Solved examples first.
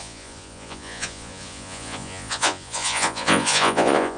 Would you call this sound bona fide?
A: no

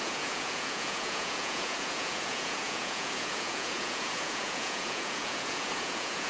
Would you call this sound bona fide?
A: no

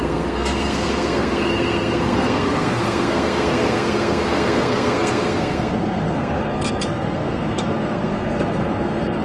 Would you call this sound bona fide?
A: no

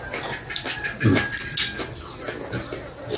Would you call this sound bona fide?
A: yes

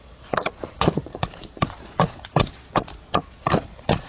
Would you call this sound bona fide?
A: no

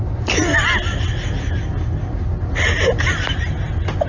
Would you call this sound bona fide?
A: yes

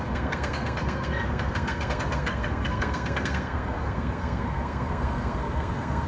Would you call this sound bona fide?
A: no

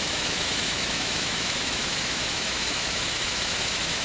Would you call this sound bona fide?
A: no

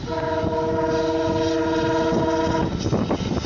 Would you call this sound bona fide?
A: yes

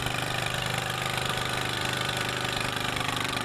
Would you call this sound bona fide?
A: no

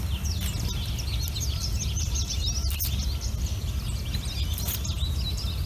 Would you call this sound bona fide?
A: yes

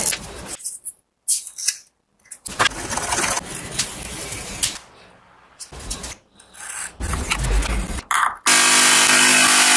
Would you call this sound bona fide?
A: yes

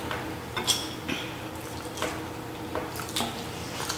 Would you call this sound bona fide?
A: yes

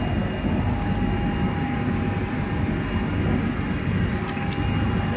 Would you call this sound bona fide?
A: yes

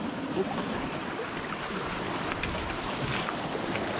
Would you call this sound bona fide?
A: yes